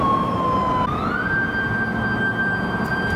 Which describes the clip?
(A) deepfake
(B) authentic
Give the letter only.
B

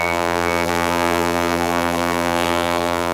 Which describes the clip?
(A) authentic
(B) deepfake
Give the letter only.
B